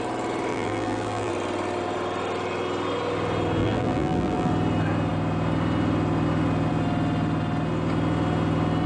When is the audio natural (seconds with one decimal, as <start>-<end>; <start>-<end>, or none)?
0.0-0.5; 1.3-3.6; 4.5-8.9